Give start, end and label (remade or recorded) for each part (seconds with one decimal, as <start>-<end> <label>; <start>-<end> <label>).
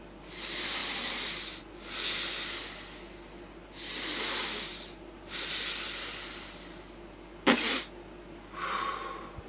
0.0-0.8 recorded; 0.8-1.6 remade; 1.6-4.7 recorded; 4.7-5.9 remade; 5.9-9.5 recorded